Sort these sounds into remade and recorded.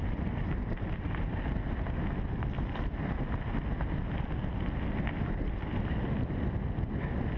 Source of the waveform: recorded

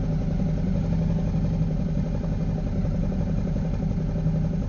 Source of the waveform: recorded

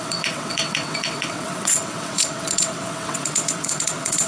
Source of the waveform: remade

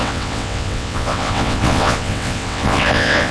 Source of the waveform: remade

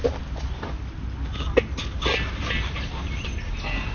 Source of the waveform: recorded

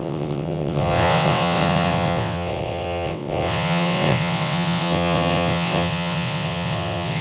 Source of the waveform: remade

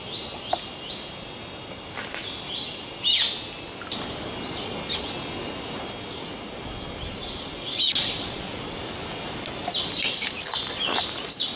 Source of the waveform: recorded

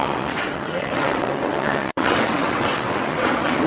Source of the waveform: remade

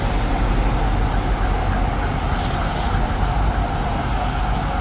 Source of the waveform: recorded